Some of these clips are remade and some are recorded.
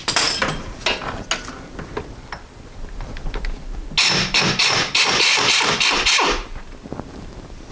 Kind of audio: recorded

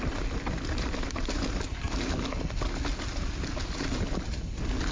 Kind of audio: recorded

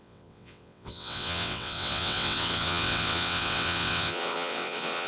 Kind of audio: remade